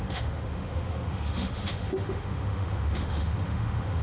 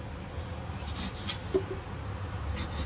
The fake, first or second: first